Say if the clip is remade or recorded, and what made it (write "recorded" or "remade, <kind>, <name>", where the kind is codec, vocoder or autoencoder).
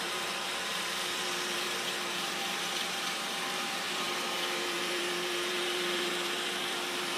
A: remade, vocoder, BigVGAN v2